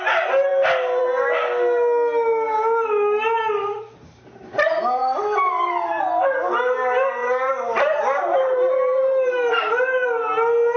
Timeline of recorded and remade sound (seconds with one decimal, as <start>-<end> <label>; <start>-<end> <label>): 0.0-5.0 recorded; 5.0-6.0 remade; 6.0-7.2 recorded; 7.2-9.6 remade; 9.6-10.8 recorded